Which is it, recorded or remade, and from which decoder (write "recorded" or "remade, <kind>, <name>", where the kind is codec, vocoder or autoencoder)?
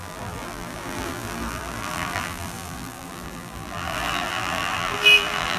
remade, vocoder, BigVGAN v2